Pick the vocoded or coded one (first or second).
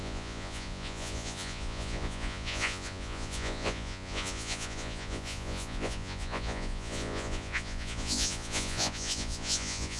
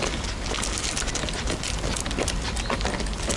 first